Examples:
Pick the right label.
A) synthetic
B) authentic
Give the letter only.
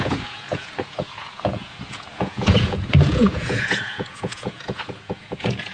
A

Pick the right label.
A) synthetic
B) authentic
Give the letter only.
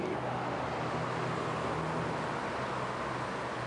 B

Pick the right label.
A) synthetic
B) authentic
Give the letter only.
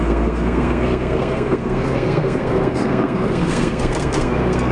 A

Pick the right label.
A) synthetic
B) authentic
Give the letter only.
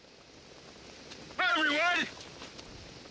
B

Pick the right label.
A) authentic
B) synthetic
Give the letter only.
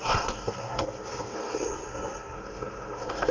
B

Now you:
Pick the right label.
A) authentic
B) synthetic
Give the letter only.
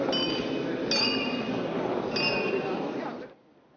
A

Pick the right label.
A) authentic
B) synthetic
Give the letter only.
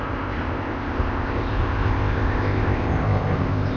B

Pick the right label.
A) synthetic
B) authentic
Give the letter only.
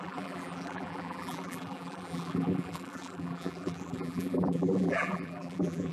A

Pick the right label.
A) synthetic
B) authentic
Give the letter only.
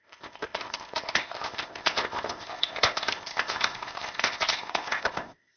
A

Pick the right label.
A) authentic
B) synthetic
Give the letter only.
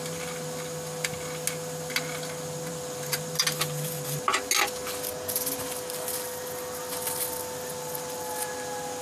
A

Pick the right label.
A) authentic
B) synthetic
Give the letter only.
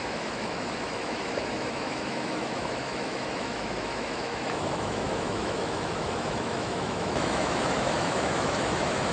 B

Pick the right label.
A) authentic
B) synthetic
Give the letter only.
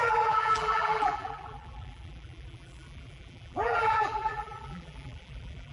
B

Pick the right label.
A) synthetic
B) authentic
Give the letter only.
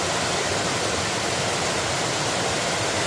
B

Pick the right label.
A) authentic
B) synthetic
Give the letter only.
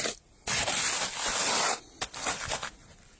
A